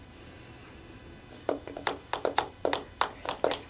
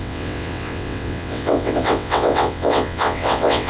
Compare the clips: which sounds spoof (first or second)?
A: second